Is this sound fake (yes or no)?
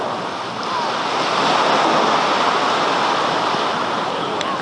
no